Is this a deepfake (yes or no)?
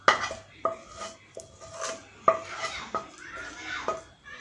no